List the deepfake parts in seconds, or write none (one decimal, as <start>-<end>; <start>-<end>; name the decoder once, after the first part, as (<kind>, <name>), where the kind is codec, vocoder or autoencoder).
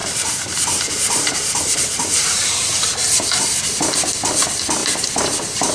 0.0-3.4 (vocoder, BigVGAN v2); 4.8-5.7